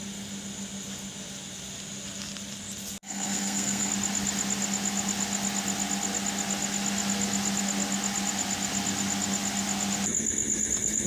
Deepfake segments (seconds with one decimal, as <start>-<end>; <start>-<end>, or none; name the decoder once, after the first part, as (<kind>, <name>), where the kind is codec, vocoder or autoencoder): 3.0-3.9 (codec, SNAC)